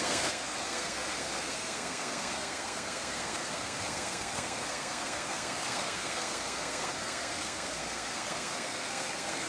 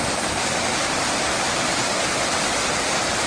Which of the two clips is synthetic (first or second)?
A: first